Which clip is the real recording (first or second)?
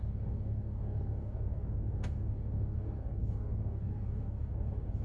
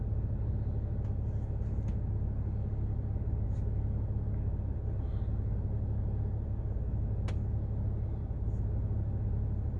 second